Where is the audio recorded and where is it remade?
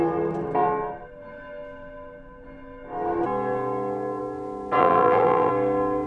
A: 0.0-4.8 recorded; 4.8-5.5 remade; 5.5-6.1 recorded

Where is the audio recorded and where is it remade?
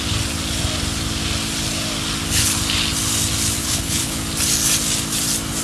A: 0.0-3.6 recorded; 3.6-4.2 remade; 4.2-5.6 recorded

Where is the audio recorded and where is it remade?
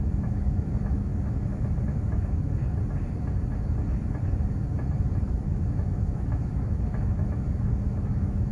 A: 0.0-2.6 remade; 2.6-5.2 recorded; 5.2-8.5 remade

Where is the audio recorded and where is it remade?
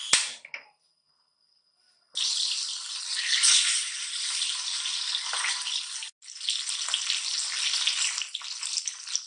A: 0.0-9.3 recorded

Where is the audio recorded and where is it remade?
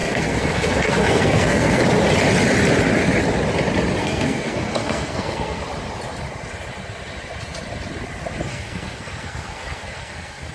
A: 0.0-1.8 remade; 1.8-4.0 recorded; 4.0-5.6 remade; 5.6-8.5 recorded; 8.5-10.5 remade